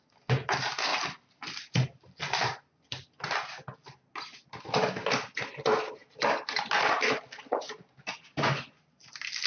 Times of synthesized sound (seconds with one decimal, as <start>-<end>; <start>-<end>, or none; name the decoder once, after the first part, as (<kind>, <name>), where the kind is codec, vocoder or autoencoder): 0.9-3.3 (vocoder, BigVGAN v2)